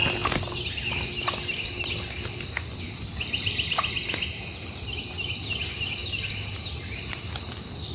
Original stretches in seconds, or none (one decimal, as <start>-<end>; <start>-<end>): 0.0-7.9